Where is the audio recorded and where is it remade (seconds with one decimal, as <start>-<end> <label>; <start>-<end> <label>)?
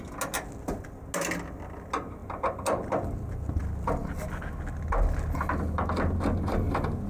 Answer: 0.0-7.1 recorded